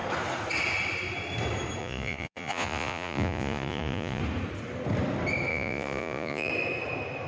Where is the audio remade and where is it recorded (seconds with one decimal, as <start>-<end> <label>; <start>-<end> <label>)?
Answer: 0.0-1.8 recorded; 1.8-4.2 remade; 4.2-5.5 recorded; 5.5-6.5 remade; 6.5-7.3 recorded